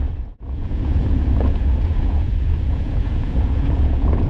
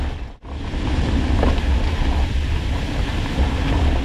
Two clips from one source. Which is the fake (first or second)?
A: first